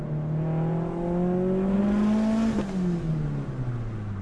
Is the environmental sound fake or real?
real